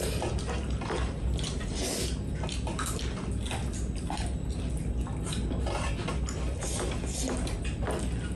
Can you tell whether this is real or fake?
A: real